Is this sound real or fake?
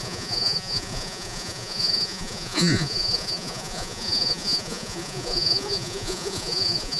fake